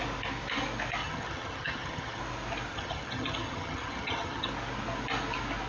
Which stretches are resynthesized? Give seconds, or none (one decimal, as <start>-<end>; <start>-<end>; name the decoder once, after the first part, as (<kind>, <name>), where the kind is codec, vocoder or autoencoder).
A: 1.0-2.2 (vocoder, HiFi-GAN); 2.7-4.5